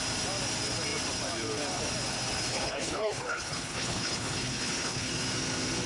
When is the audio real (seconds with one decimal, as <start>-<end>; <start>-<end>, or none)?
0.0-2.5; 5.1-5.9